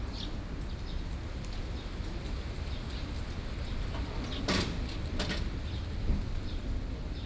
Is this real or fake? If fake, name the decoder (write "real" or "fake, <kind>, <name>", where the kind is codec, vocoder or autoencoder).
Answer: real